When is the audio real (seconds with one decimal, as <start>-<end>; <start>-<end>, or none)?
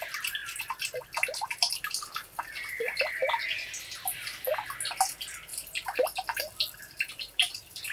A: 0.0-7.9